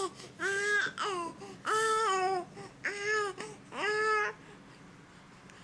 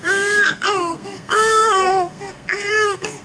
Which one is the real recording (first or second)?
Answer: first